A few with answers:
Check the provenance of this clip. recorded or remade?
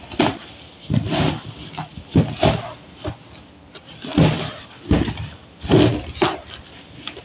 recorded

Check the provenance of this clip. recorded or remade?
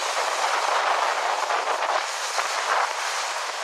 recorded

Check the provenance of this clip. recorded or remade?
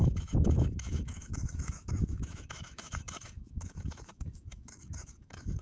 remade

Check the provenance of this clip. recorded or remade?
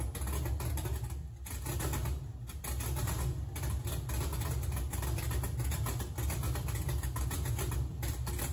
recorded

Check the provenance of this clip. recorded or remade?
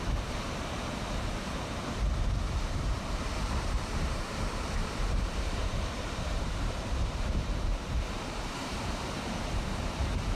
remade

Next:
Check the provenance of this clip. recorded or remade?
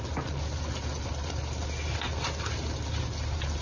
recorded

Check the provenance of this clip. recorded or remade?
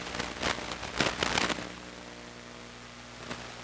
recorded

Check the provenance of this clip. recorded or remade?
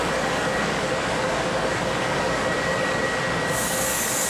remade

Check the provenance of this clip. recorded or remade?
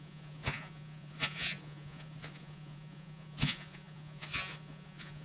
remade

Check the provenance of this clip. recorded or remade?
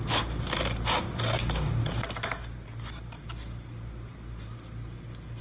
recorded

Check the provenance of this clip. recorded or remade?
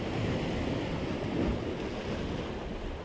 recorded